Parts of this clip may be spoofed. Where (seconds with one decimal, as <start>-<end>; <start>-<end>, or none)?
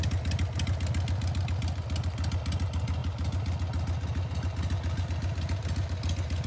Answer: none